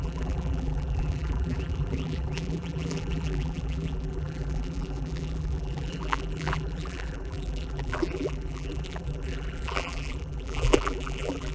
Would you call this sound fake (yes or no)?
yes